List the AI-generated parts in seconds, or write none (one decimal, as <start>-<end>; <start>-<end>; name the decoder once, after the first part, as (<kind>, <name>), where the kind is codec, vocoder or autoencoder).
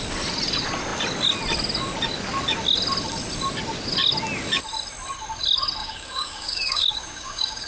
5.8-7.7 (codec, DAC)